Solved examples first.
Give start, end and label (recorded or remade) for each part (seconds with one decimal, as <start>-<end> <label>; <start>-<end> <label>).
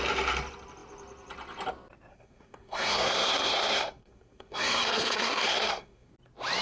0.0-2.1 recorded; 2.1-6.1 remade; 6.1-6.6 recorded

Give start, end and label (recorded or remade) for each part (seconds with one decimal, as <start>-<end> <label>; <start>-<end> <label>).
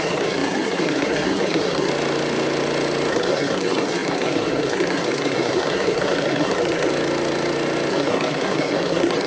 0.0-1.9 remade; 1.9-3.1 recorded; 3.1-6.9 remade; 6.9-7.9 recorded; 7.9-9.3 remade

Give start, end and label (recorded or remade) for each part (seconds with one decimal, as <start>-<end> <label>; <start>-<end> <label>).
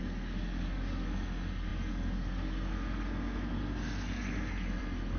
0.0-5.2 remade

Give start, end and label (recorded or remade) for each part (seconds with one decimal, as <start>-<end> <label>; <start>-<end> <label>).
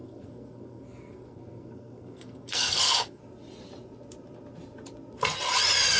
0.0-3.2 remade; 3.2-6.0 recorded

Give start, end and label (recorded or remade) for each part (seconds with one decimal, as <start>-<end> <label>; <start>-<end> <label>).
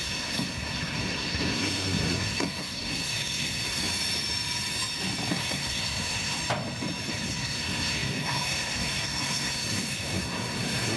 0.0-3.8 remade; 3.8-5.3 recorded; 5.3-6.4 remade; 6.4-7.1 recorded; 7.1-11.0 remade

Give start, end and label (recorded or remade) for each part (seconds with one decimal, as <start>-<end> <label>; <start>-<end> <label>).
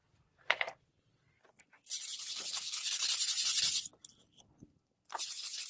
0.0-5.7 recorded